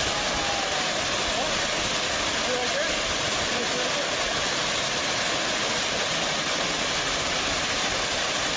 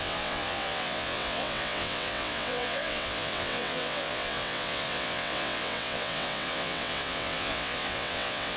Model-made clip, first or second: second